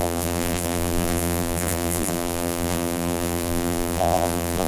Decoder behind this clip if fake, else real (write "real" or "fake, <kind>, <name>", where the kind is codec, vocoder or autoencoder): fake, vocoder, BigVGAN v2